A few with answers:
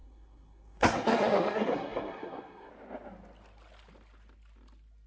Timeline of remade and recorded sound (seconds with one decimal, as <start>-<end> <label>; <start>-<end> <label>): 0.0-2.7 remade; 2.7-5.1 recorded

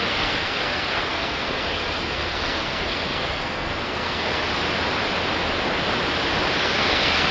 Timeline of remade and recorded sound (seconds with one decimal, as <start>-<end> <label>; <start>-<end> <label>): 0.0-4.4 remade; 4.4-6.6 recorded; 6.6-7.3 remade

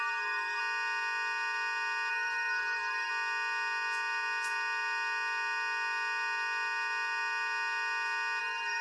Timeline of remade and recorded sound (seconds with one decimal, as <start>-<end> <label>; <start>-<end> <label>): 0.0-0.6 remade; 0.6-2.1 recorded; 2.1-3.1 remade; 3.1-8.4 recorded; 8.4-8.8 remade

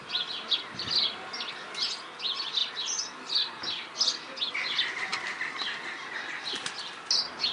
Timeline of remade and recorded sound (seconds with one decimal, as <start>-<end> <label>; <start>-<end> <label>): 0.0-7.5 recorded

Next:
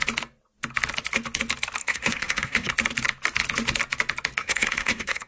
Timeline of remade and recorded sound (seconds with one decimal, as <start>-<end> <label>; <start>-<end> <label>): 0.0-1.8 recorded; 1.8-2.7 remade; 2.7-4.4 recorded; 4.4-5.3 remade

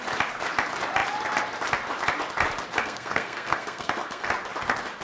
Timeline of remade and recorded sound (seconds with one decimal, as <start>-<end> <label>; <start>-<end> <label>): 0.0-2.8 recorded; 2.8-4.3 remade; 4.3-5.0 recorded

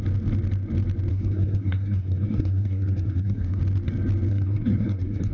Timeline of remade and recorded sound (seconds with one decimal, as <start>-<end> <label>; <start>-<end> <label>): 0.0-1.1 recorded; 1.1-3.6 remade; 3.6-4.3 recorded; 4.3-5.3 remade

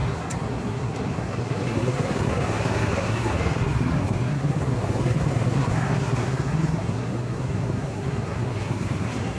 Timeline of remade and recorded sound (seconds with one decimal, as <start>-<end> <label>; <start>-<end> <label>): 0.0-9.4 remade